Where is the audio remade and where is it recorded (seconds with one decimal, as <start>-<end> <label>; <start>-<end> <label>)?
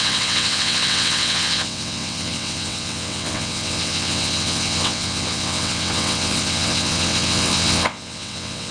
0.0-8.7 remade